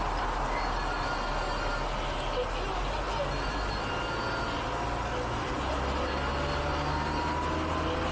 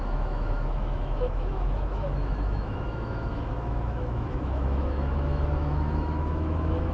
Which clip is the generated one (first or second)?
second